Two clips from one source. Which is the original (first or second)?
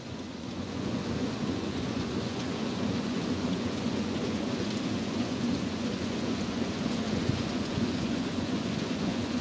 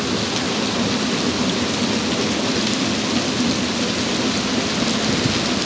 second